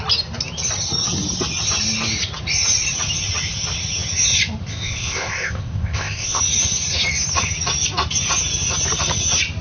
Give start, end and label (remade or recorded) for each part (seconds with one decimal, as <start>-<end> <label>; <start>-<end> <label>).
0.0-4.7 recorded; 4.7-6.4 remade; 6.4-9.6 recorded